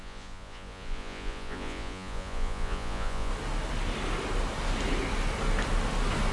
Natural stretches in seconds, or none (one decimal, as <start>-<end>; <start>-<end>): 3.3-6.3